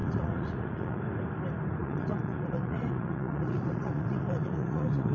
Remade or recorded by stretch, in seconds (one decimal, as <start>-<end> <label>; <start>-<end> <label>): 0.0-1.0 remade; 1.0-1.8 recorded; 1.8-5.1 remade

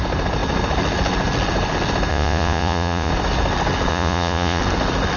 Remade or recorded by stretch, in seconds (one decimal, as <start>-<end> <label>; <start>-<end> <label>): 0.0-2.1 recorded; 2.1-3.1 remade; 3.1-3.9 recorded; 3.9-4.6 remade; 4.6-5.2 recorded

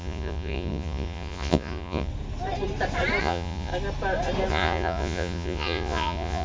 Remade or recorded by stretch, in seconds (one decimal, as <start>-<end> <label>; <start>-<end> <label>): 0.0-2.1 remade; 2.1-3.2 recorded; 3.2-3.7 remade; 3.7-4.5 recorded; 4.5-6.4 remade

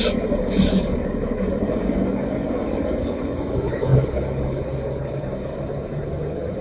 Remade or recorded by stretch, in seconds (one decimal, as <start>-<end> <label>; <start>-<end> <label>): 0.0-6.6 remade

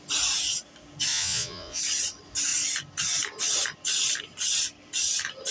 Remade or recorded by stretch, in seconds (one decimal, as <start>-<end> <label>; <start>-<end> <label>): 0.0-1.1 recorded; 1.1-1.8 remade; 1.8-5.5 recorded

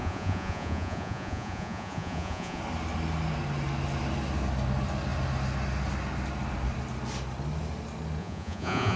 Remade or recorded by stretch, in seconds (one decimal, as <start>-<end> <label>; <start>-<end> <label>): 0.0-2.6 remade; 2.6-8.2 recorded; 8.2-9.0 remade

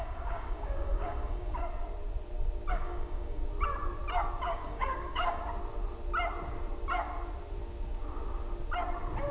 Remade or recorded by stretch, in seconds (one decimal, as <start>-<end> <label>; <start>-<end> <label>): 0.0-1.6 remade; 1.6-2.7 recorded; 2.7-3.4 remade; 3.4-4.4 recorded; 4.4-5.4 remade; 5.4-9.3 recorded

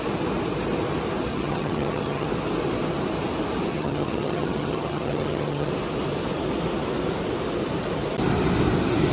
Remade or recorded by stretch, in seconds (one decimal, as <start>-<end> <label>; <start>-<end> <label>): 0.0-1.3 recorded; 1.3-2.3 remade; 2.3-3.7 recorded; 3.7-5.7 remade; 5.7-9.1 recorded